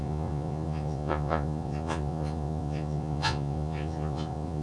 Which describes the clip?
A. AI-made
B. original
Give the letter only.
A